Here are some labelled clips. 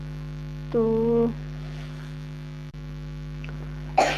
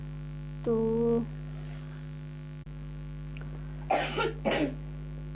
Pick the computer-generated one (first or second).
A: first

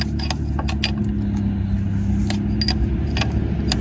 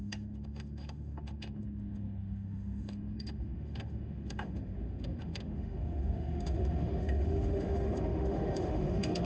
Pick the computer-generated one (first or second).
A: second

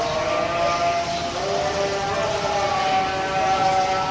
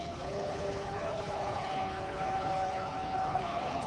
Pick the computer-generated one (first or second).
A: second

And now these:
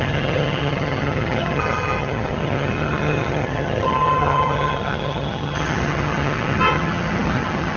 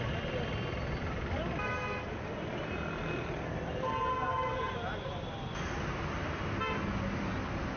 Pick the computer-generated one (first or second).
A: first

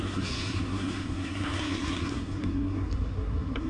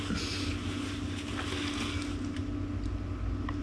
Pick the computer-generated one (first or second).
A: first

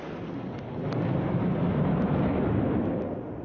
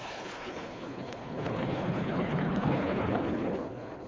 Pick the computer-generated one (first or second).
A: second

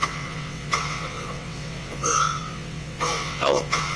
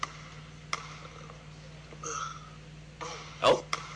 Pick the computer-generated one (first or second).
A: first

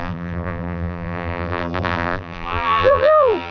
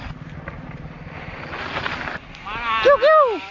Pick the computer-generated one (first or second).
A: first